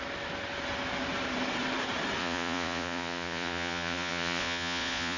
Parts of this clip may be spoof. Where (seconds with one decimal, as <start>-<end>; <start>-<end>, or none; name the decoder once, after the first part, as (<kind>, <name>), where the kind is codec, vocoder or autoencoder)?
2.2-5.2 (vocoder, Vocos)